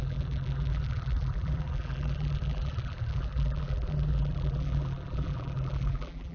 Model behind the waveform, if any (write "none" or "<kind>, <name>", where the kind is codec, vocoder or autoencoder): vocoder, BigVGAN v2